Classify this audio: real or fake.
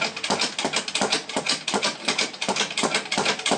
real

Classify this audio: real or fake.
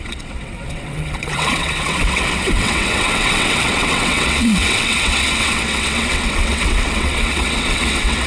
fake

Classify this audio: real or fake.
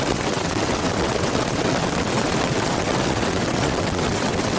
fake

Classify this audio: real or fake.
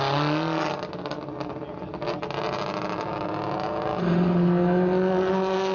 real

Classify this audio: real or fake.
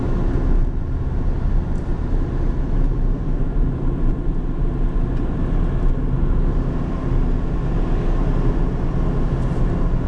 real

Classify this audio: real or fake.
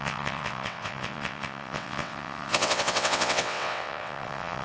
fake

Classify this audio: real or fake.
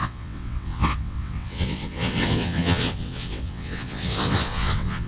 fake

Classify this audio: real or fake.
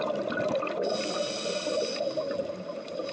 real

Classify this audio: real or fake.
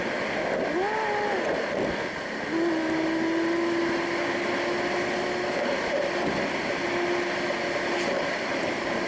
real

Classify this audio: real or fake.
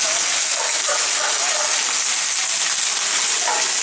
real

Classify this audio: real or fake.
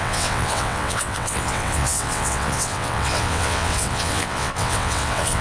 fake